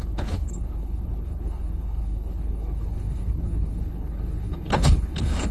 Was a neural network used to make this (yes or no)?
yes